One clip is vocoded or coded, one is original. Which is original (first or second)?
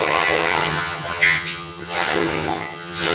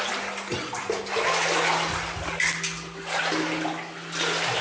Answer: second